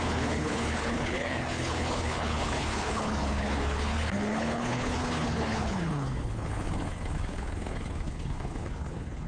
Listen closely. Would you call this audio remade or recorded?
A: remade